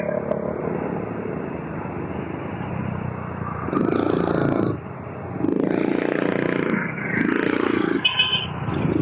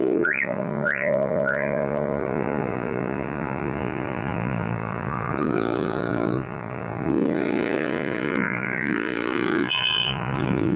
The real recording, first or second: first